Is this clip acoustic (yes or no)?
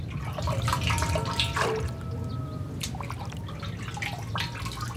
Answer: yes